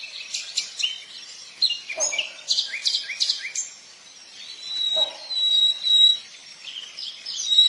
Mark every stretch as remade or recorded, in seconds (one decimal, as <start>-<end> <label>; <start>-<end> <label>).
0.0-2.8 remade; 2.8-3.8 recorded; 3.8-5.2 remade; 5.2-5.9 recorded; 5.9-7.7 remade